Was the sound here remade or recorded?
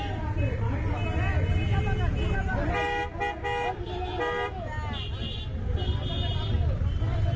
recorded